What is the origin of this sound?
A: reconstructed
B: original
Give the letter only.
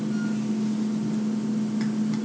B